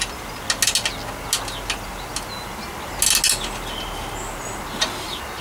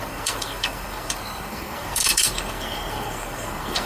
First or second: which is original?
first